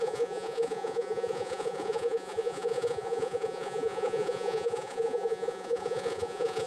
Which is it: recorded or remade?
remade